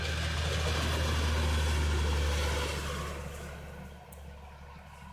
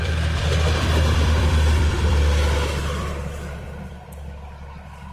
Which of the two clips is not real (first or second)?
second